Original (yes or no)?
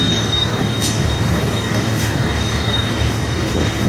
no